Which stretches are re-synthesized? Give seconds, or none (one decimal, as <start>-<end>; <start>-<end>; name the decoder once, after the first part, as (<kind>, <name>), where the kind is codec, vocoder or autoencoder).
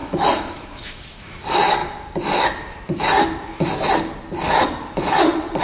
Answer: 0.0-1.4 (autoencoder, DAC-VAE)